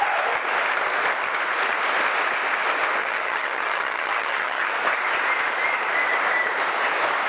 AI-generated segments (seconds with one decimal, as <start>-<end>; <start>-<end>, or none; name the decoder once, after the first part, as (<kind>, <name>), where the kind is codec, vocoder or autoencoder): 3.0-4.7 (vocoder, HiFi-GAN)